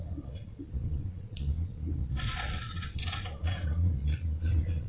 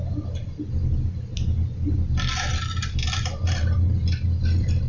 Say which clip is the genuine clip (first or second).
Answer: second